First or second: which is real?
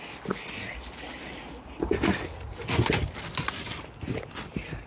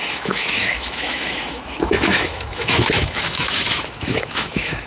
first